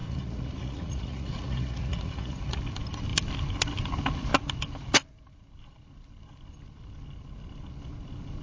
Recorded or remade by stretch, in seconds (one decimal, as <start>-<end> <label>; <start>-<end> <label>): 0.0-2.6 remade; 2.6-8.4 recorded